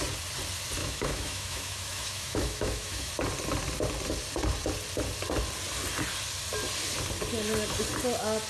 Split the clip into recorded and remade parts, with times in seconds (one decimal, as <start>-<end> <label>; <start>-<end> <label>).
0.0-0.8 recorded; 0.8-3.1 remade; 3.1-8.5 recorded